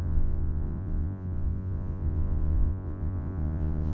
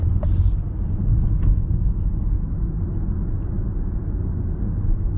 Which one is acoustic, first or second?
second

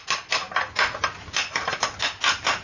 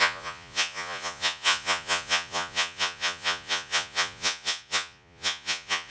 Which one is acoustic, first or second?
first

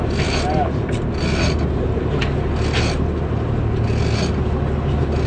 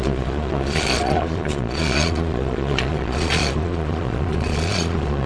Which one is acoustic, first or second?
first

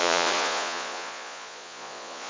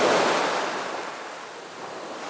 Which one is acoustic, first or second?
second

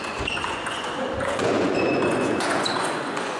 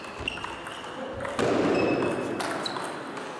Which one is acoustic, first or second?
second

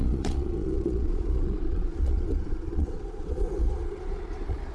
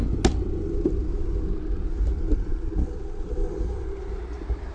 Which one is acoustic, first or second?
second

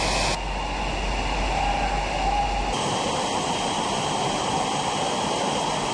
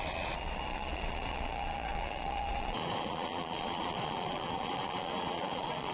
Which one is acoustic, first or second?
first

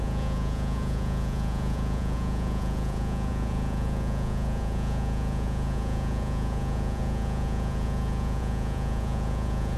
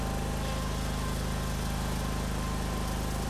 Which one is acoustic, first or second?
second